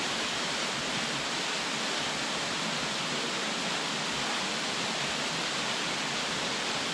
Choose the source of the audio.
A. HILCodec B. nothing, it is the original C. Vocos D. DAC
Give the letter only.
B